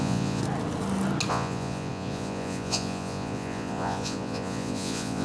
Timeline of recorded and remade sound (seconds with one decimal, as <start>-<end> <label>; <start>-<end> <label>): 0.0-0.4 remade; 0.4-1.3 recorded; 1.3-5.2 remade